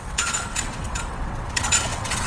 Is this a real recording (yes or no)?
no